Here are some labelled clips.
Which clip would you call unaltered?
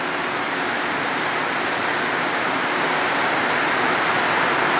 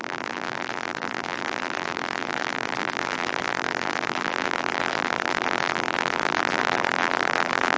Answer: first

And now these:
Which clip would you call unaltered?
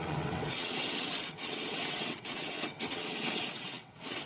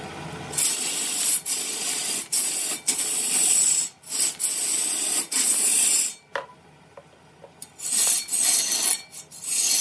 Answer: second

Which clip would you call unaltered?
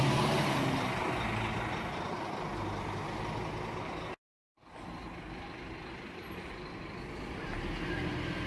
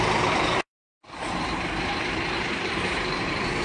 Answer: first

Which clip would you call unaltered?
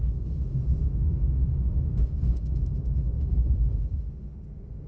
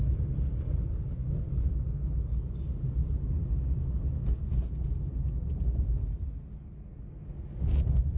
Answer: second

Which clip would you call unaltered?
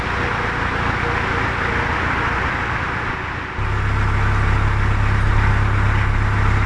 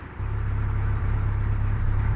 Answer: first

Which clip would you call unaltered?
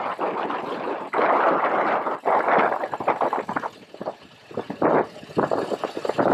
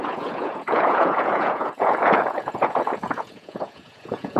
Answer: first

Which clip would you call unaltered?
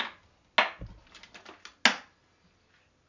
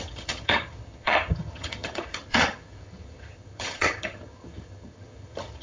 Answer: first